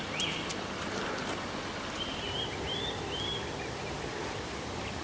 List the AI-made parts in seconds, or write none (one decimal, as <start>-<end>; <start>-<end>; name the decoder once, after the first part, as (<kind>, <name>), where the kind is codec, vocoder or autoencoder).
none